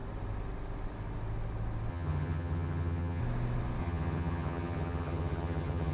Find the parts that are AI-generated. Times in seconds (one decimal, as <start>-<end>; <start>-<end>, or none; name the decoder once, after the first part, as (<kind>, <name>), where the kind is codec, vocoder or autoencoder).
1.9-3.2 (vocoder, HiFi-GAN); 3.8-5.9